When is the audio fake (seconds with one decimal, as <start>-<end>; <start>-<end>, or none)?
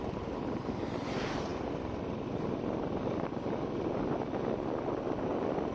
none